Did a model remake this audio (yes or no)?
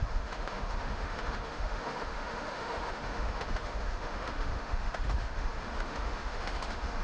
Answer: yes